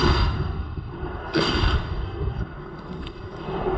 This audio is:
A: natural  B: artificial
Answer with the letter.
B